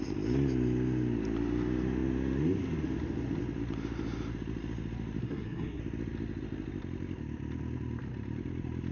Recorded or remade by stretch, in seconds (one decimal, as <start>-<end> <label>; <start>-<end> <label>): 0.0-5.2 recorded; 5.2-5.8 remade; 5.8-8.9 recorded